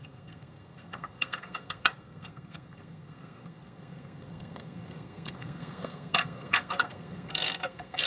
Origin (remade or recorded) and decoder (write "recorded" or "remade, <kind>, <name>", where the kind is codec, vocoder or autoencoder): remade, codec, SNAC